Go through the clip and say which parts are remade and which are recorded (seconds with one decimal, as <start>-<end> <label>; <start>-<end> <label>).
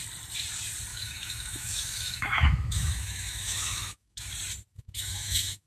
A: 0.0-0.9 recorded; 0.9-4.3 remade; 4.3-4.7 recorded; 4.7-5.7 remade